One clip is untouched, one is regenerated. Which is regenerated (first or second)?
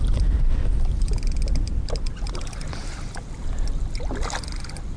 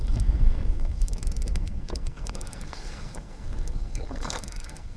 second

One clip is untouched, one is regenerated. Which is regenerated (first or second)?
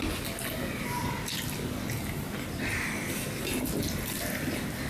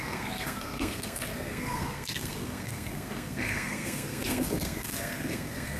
second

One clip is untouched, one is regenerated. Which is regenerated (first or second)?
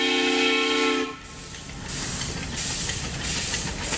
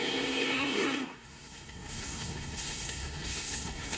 second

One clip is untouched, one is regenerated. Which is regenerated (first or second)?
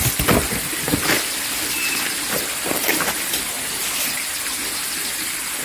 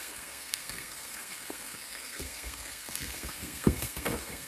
second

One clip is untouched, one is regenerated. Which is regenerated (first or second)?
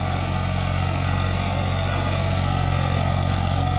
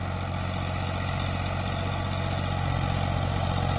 first